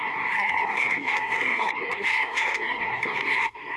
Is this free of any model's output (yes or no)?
no